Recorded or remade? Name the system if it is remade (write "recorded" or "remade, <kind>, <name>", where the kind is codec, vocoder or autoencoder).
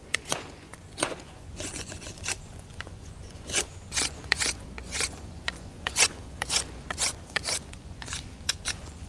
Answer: remade, vocoder, Vocos